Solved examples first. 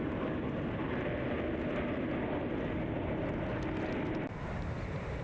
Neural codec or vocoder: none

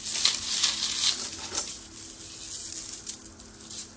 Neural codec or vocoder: none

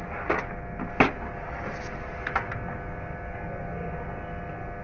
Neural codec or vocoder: none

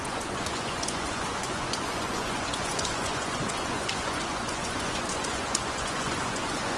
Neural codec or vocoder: vocoder, Vocos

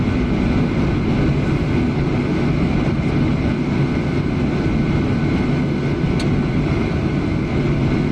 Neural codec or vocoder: none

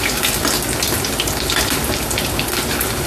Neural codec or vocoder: none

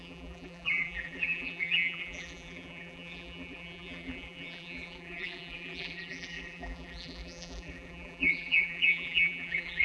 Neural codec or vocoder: vocoder, BigVGAN v2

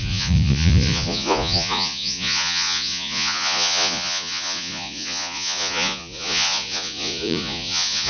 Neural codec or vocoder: vocoder, Vocos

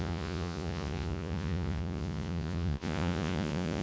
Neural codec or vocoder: vocoder, Vocos